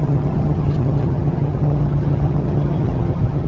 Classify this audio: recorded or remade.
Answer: remade